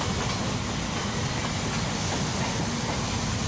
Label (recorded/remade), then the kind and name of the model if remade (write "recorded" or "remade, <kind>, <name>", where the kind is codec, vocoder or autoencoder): recorded